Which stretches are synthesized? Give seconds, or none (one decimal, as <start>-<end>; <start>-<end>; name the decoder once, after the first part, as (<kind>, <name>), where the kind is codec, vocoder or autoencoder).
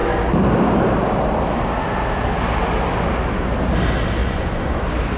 4.2-4.8 (vocoder, Vocos)